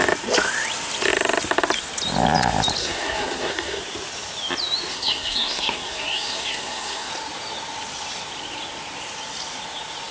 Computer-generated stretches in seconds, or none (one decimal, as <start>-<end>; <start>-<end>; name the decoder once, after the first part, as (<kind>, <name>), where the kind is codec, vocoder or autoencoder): 2.8-3.8 (codec, SNAC); 4.9-7.1